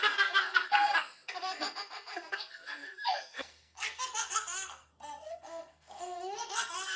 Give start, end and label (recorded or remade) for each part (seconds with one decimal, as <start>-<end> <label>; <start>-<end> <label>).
0.0-7.0 remade